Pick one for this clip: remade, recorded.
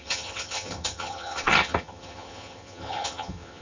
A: remade